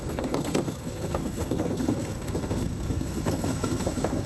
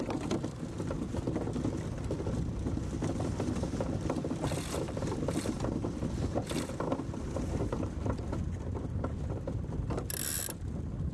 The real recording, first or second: second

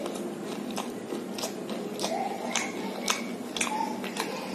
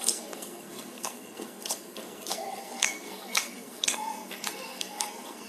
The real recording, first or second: first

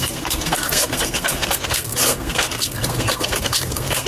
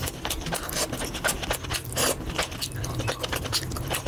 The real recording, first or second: second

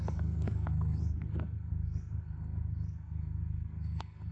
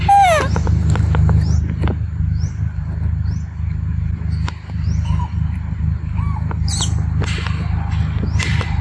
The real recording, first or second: second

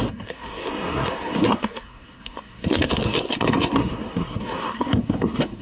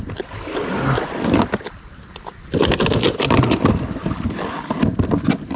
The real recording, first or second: second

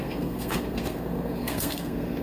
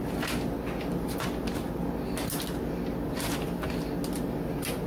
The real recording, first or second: second